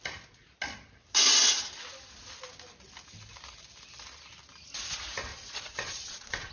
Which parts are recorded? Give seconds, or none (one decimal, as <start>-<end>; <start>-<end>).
0.0-5.3